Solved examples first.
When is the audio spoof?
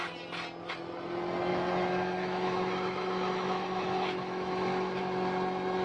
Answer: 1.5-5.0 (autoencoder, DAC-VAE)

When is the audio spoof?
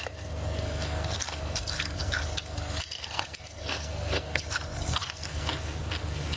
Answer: 0.0-6.4 (codec, SNAC)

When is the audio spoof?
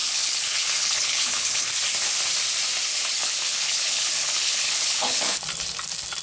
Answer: 0.0-1.7 (codec, HILCodec); 2.9-5.4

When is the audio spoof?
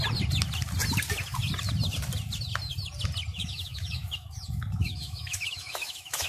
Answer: 3.3-6.3 (autoencoder, DAC-VAE)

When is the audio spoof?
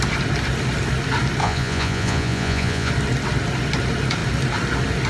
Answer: 1.4-2.9 (vocoder, Vocos)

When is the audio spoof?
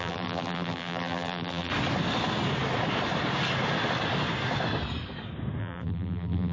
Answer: 0.0-1.7 (vocoder, BigVGAN v2); 5.6-6.5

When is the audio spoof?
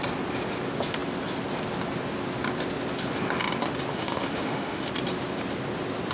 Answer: 3.9-4.9 (autoencoder, DAC-VAE)